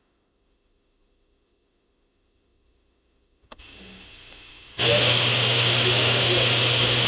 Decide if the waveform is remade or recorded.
remade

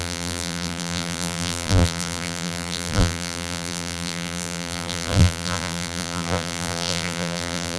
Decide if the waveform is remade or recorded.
remade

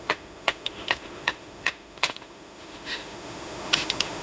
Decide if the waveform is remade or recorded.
remade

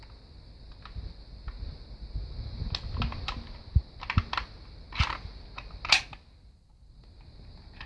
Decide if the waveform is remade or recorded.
recorded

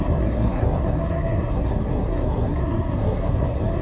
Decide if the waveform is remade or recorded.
remade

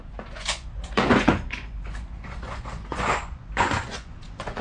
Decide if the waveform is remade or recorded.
remade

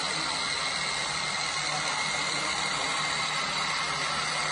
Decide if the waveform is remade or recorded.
recorded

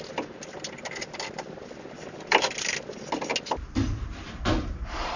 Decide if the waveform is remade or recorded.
recorded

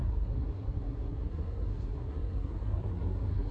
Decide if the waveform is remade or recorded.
remade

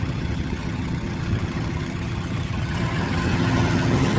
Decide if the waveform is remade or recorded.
remade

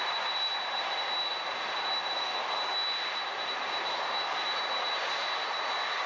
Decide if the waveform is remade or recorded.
recorded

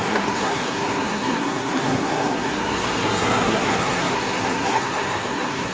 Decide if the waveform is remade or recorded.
remade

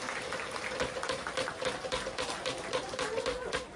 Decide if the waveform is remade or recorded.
recorded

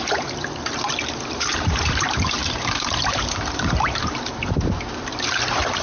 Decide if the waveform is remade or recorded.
remade